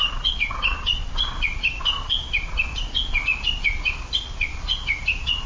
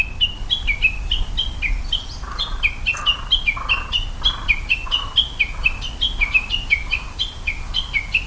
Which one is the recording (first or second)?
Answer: second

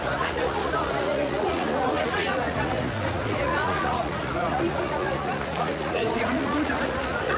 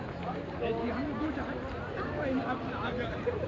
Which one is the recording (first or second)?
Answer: second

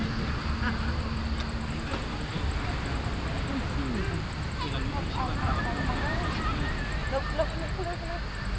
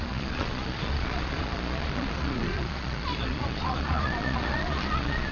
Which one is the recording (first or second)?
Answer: first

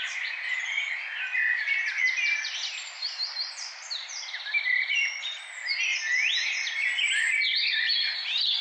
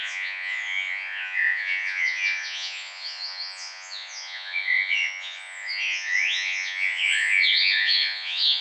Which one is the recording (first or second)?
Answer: first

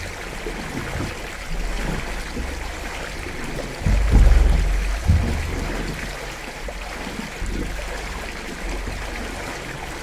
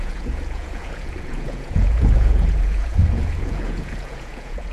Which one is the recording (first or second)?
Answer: first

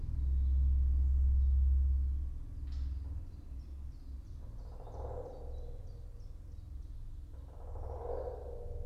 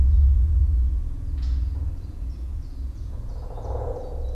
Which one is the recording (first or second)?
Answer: first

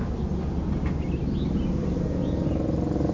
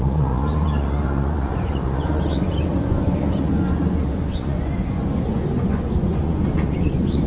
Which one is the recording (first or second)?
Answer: first